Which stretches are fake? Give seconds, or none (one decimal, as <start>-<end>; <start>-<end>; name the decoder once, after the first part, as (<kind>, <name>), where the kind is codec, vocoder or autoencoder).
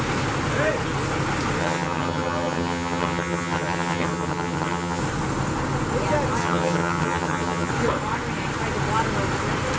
1.6-5.0 (vocoder, HiFi-GAN); 6.4-7.7